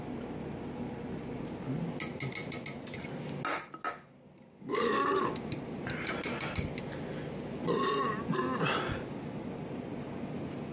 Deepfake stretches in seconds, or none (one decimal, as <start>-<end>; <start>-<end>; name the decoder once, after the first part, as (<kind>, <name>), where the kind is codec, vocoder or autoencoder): none